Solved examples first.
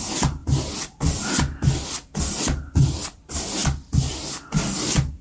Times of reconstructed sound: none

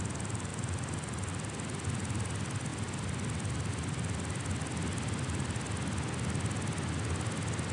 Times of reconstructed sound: 0.5-1.3 (vocoder, BigVGAN v2)

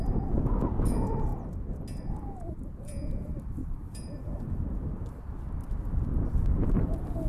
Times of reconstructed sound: 3.6-4.5 (vocoder, BigVGAN v2); 6.1-6.8

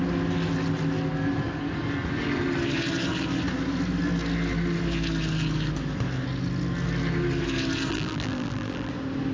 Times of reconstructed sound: 7.9-8.9 (vocoder, BigVGAN v2)

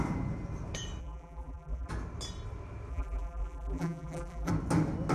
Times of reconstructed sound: 1.0-1.9 (vocoder, BigVGAN v2); 2.9-4.5

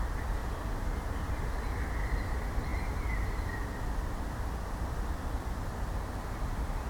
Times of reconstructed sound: 0.4-1.3 (vocoder, BigVGAN v2); 2.7-3.4

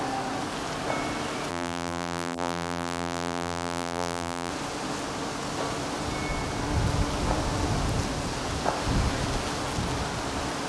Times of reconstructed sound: 1.5-4.5 (vocoder, BigVGAN v2)

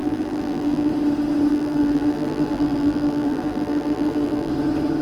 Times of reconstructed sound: 0.0-0.9 (vocoder, BigVGAN v2); 1.5-4.5